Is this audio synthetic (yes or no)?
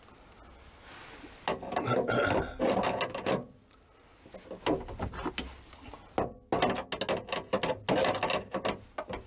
no